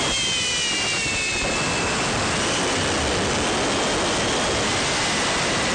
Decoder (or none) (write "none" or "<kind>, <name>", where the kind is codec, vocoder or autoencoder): none